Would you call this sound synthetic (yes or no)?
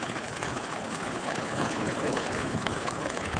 yes